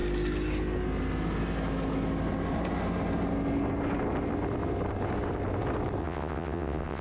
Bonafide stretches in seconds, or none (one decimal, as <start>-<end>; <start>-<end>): 0.0-6.0